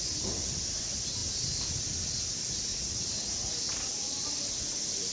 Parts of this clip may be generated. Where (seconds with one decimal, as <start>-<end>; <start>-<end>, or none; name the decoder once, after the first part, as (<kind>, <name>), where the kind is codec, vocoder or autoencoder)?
2.7-3.5 (vocoder, Vocos)